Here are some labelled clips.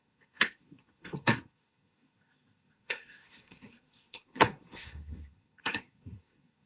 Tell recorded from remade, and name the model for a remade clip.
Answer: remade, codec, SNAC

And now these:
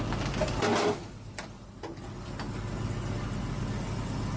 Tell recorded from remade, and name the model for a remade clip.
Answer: recorded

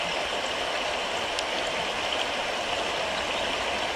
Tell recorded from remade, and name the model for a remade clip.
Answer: recorded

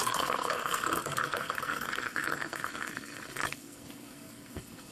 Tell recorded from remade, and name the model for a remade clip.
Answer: remade, codec, SNAC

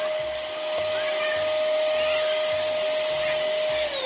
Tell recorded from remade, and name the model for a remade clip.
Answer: recorded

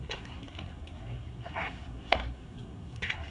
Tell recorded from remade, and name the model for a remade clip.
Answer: remade, codec, SNAC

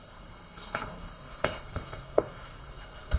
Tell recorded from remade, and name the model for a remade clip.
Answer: remade, codec, SNAC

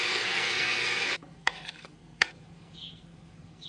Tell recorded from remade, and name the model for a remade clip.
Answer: remade, codec, SNAC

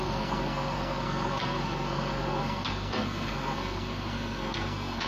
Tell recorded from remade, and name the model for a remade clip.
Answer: remade, codec, SNAC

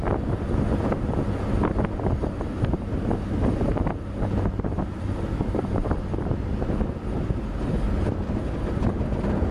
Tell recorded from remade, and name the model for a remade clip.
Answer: recorded